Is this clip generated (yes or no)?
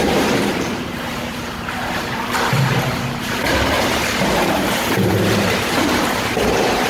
yes